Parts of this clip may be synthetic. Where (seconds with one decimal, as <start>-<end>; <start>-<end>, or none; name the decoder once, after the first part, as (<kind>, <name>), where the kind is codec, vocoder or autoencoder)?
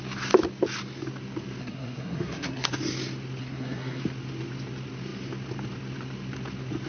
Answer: 1.6-2.7 (codec, SNAC); 3.4-4.0